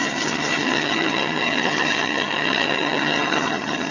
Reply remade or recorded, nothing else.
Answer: remade